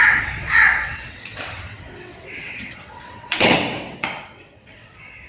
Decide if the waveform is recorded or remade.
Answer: remade